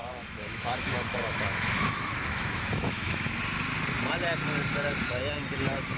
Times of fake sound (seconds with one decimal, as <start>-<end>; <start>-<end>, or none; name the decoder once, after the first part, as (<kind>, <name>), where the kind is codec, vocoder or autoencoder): 0.0-3.4 (autoencoder, DAC-VAE)